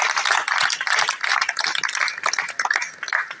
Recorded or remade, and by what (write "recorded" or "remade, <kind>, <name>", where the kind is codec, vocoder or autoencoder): recorded